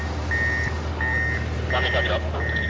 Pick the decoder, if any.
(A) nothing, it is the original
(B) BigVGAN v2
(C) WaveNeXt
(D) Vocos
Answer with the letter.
A